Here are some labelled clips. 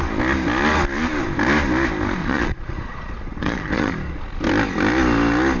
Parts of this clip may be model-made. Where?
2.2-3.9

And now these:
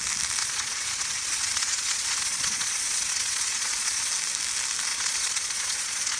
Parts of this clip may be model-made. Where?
0.4-4.1; 4.9-6.2

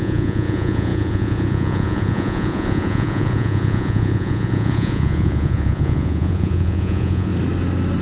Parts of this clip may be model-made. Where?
0.0-7.3

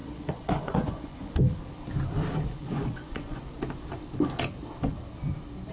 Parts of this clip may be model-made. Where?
0.0-1.3; 2.6-3.4

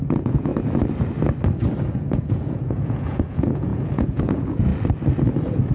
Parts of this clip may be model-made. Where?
0.0-0.5; 1.9-4.7

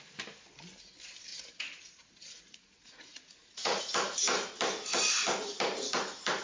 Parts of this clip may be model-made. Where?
1.3-3.8

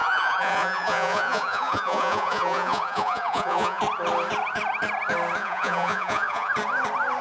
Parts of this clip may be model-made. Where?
0.0-3.8; 5.4-6.5